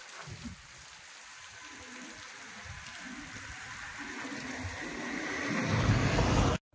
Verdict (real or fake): real